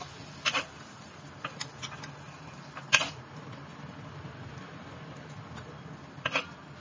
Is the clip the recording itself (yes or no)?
yes